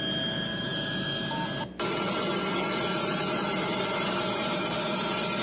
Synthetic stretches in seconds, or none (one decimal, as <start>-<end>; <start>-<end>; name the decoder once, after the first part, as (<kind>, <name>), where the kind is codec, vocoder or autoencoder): none